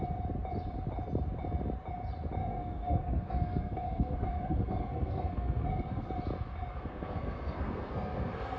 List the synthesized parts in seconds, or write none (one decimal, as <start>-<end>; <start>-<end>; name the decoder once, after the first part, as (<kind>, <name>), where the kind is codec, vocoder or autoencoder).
2.4-6.1 (codec, SNAC); 6.7-8.6